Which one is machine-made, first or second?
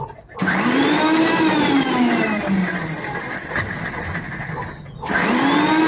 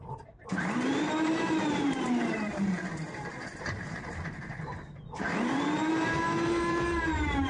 second